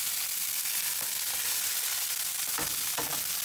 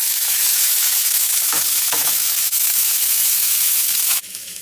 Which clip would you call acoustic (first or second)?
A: first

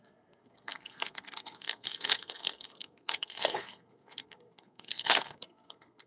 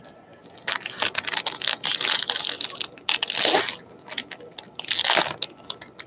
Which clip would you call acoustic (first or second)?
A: second